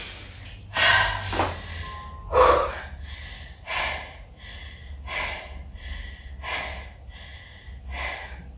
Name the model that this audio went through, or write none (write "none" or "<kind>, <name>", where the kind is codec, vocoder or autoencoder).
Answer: none